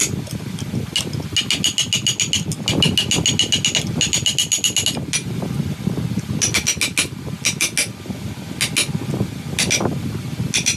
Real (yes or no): yes